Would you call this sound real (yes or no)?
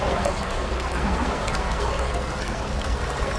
no